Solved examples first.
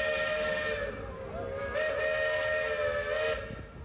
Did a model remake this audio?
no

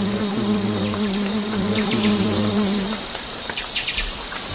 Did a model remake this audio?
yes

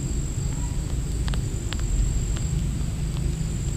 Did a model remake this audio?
no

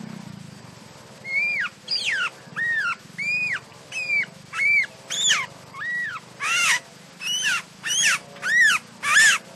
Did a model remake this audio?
no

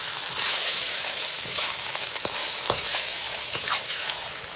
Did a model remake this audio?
yes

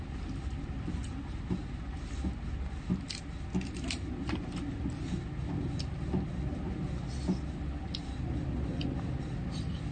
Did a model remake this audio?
no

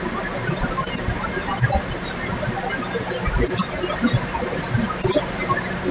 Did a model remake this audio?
no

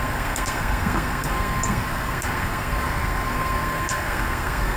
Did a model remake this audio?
yes